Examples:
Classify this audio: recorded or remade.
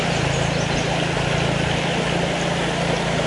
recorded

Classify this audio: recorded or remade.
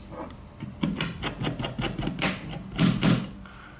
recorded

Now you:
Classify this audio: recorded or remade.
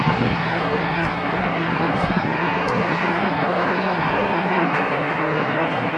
remade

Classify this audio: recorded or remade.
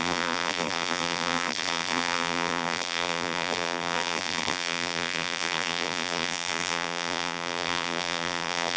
remade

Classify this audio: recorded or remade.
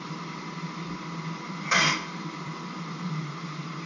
remade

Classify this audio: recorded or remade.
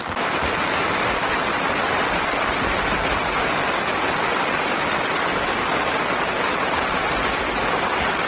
recorded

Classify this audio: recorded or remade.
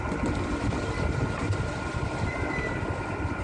recorded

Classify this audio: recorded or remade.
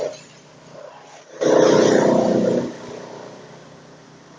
recorded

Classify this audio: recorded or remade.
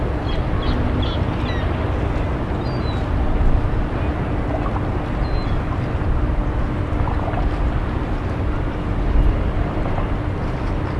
recorded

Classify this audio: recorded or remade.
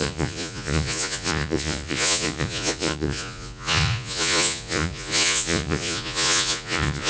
remade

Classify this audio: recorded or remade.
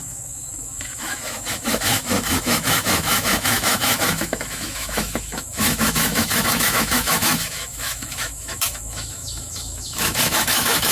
remade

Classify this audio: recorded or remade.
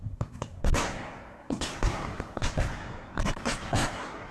remade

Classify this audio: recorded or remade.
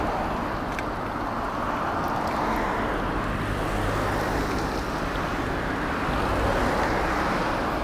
recorded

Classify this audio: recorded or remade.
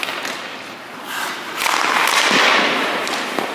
recorded